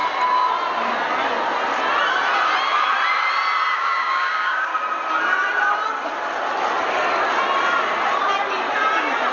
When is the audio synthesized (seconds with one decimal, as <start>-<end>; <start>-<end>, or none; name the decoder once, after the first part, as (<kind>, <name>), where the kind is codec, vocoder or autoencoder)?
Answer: 3.7-4.7 (codec, DAC)